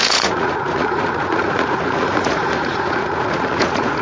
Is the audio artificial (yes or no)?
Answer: yes